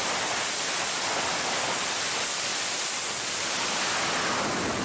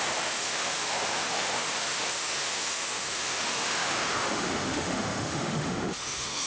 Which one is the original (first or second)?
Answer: first